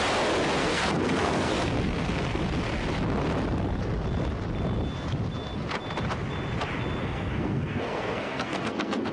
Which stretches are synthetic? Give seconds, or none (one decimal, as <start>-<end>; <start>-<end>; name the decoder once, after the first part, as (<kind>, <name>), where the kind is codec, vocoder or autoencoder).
0.6-2.4 (codec, SNAC); 7.0-9.1